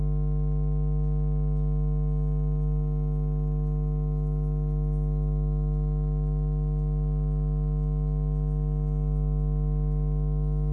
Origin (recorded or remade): recorded